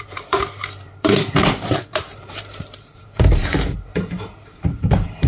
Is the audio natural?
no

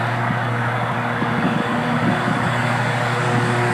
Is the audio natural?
no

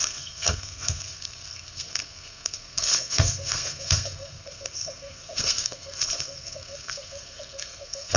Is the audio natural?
no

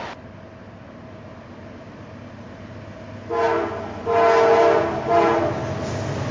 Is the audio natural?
yes